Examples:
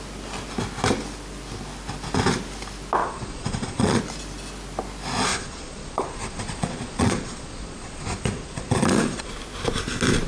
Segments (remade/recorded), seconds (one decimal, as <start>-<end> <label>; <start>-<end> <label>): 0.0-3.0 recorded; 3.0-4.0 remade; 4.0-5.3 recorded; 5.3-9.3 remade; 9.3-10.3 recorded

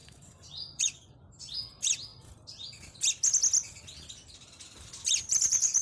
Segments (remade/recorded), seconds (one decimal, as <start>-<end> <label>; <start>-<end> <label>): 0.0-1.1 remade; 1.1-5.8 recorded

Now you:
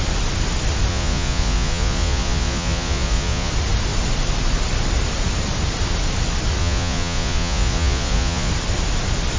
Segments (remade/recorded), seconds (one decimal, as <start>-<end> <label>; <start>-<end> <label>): 0.0-0.9 recorded; 0.9-3.5 remade; 3.5-6.6 recorded; 6.6-8.5 remade; 8.5-9.4 recorded